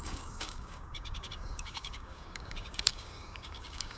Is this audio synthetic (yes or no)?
yes